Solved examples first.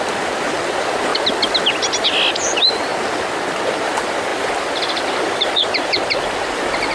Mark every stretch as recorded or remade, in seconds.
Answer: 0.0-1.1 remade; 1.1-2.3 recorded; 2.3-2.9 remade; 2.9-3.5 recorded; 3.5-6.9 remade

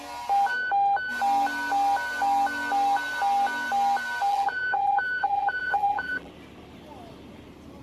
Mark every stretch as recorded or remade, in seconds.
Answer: 0.0-4.3 recorded; 4.3-6.3 remade; 6.3-7.8 recorded